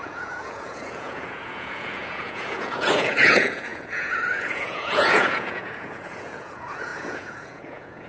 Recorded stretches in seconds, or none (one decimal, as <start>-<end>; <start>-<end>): none

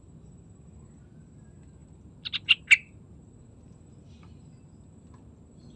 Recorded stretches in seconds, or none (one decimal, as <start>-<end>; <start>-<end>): 0.0-5.8

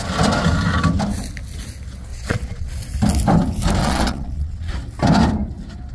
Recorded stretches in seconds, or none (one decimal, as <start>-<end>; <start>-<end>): 0.0-2.1; 2.7-3.8; 4.7-5.9

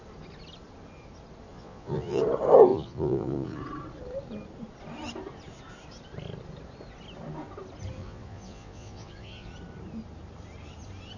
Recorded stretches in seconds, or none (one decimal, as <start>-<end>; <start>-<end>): 0.0-1.5; 2.2-2.7; 3.6-8.0; 9.5-11.2

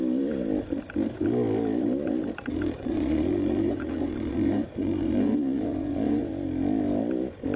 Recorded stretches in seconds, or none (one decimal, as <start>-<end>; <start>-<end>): 0.0-2.5; 6.3-7.6